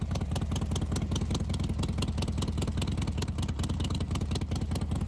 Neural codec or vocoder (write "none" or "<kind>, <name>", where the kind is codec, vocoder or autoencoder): none